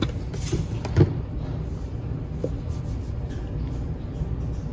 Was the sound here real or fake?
real